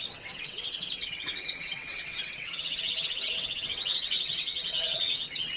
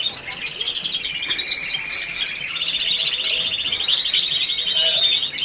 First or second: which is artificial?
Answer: first